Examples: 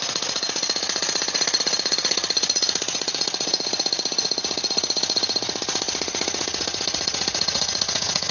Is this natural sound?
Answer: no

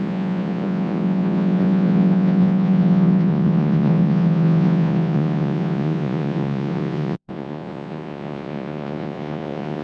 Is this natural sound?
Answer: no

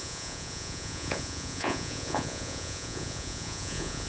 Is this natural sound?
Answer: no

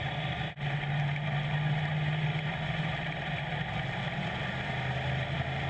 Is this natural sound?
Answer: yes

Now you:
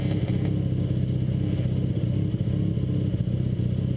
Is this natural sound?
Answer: yes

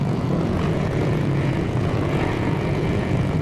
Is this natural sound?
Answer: no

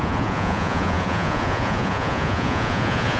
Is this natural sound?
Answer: no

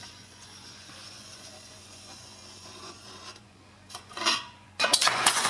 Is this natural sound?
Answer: no